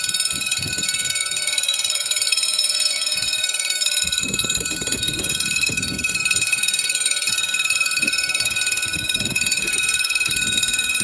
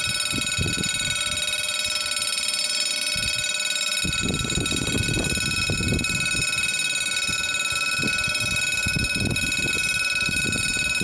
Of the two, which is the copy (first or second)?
first